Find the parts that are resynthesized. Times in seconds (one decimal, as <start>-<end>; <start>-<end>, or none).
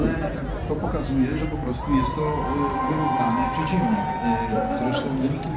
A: none